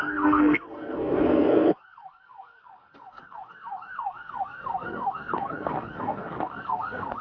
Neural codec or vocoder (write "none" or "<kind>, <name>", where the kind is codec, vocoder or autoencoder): codec, SNAC